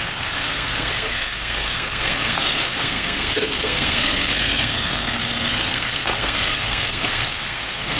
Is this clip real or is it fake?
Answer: fake